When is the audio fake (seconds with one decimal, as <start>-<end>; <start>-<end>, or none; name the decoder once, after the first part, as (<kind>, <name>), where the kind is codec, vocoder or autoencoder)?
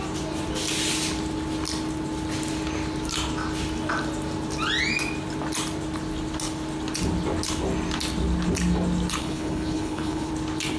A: 9.2-10.3 (codec, HILCodec)